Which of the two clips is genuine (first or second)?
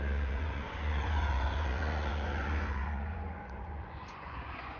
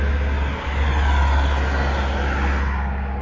second